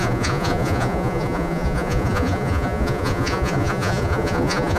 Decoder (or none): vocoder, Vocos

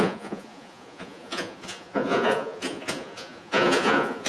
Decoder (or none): vocoder, Vocos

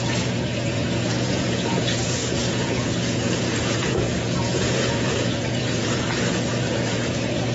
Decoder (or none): vocoder, Vocos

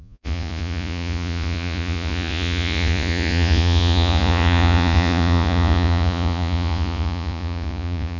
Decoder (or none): vocoder, Vocos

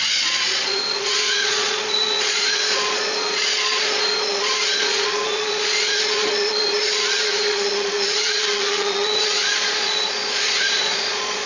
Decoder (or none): vocoder, Vocos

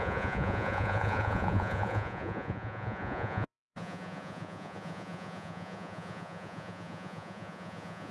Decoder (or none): vocoder, Vocos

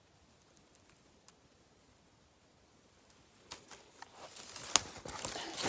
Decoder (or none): none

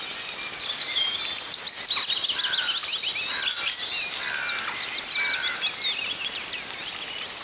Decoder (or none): none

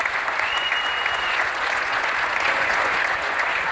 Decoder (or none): vocoder, Vocos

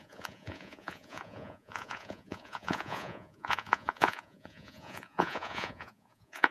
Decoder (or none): vocoder, Vocos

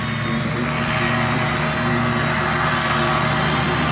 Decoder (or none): none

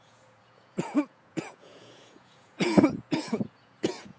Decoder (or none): vocoder, Vocos